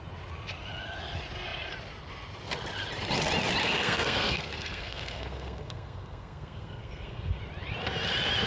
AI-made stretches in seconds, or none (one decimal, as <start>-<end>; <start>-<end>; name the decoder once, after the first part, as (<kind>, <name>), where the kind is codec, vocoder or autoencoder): 3.6-7.4 (codec, SNAC)